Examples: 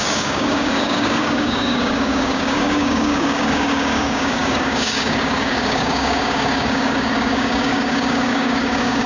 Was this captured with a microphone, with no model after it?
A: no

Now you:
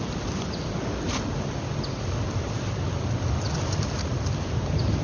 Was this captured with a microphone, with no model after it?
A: yes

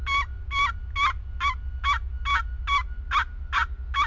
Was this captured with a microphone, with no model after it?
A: yes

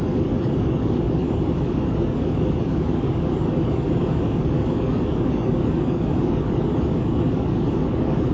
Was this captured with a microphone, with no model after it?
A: no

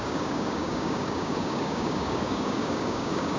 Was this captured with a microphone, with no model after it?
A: no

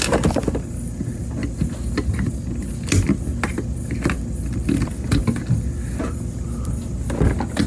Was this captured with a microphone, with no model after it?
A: yes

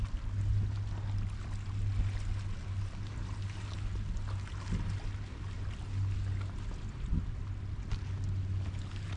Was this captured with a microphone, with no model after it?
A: yes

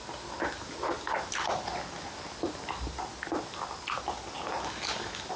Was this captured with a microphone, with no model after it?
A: yes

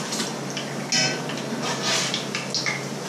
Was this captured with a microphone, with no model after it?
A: yes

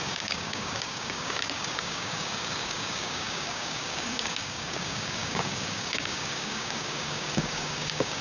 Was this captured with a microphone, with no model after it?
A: no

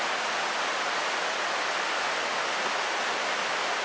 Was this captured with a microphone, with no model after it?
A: yes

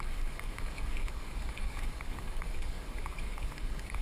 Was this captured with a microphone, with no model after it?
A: no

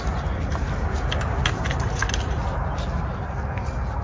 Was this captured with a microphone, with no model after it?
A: yes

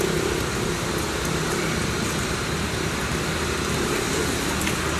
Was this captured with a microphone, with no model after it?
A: yes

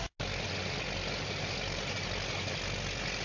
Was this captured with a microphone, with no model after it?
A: yes